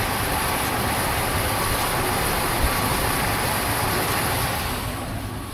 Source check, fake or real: real